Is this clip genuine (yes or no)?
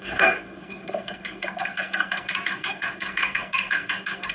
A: no